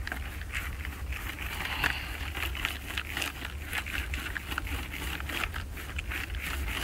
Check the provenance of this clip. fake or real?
real